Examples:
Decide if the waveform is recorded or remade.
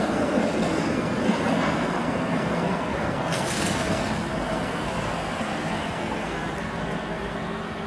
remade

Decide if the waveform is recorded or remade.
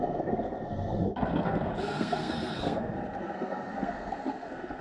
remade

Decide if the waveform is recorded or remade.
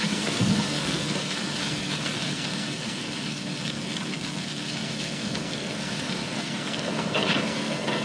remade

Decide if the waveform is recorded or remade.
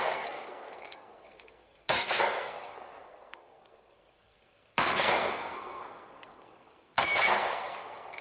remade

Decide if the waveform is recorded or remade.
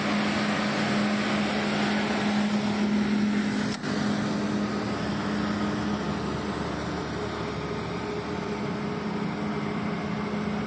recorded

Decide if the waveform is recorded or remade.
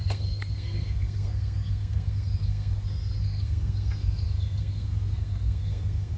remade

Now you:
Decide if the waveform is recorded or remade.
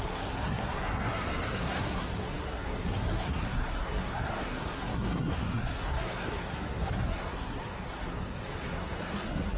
remade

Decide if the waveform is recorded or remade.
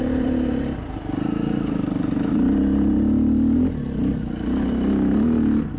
recorded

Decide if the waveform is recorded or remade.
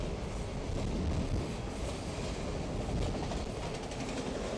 recorded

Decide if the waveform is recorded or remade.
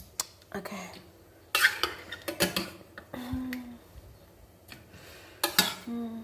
recorded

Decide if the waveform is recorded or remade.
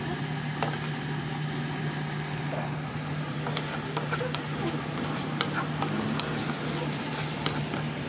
recorded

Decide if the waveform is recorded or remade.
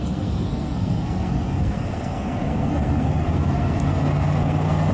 remade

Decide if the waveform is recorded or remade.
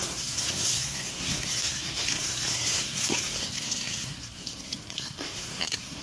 remade